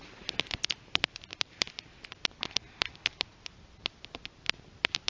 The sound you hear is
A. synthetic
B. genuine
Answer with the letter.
B